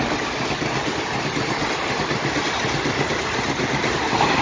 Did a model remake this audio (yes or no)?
no